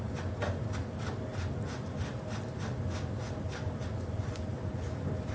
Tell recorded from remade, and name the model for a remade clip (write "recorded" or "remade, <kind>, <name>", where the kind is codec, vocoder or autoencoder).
recorded